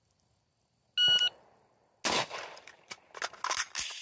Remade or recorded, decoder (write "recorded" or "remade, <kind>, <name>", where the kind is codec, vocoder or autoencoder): recorded